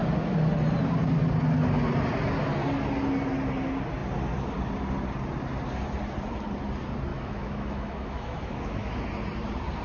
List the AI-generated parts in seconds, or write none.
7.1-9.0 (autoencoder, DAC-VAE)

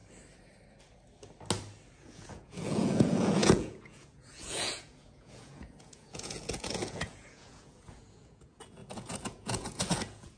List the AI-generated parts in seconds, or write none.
2.0-10.4 (vocoder, Vocos)

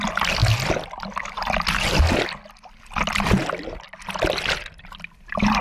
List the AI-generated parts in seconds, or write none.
none

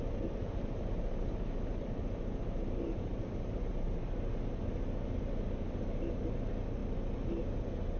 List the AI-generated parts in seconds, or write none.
0.4-4.3 (vocoder, BigVGAN v2)